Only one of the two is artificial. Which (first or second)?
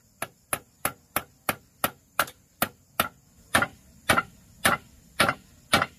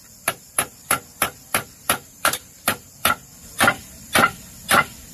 second